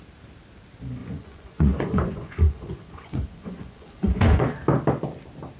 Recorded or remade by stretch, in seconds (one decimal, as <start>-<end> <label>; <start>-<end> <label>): 0.0-1.0 recorded; 1.0-4.4 remade; 4.4-5.6 recorded